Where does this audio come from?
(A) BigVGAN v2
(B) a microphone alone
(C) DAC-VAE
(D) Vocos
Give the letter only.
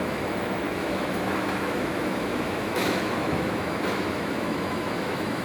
C